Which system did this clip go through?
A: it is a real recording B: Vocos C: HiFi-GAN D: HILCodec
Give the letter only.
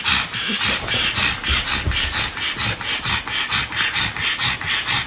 A